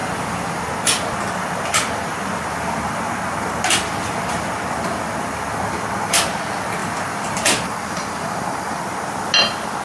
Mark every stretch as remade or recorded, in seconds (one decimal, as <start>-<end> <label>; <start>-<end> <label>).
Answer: 0.0-0.6 remade; 0.6-6.8 recorded; 6.8-7.7 remade; 7.7-9.8 recorded